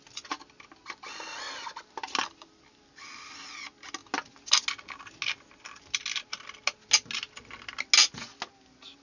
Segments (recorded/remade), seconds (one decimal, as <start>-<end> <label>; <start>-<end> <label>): 0.0-9.0 recorded